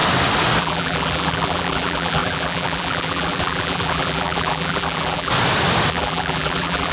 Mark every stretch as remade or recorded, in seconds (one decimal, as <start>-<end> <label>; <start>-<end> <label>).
0.0-0.6 recorded; 0.6-5.3 remade; 5.3-5.9 recorded; 5.9-6.9 remade